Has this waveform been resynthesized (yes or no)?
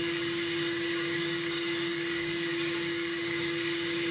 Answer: yes